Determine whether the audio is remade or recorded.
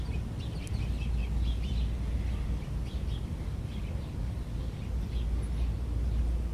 recorded